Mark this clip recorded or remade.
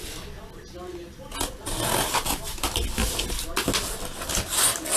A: recorded